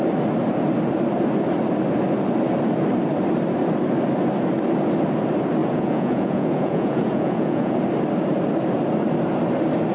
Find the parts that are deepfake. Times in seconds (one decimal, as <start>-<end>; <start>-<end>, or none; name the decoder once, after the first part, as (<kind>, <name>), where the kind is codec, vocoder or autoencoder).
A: 5.6-7.8 (vocoder, Vocos)